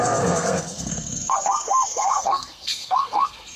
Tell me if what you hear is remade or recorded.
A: remade